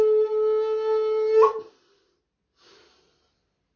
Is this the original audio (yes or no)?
yes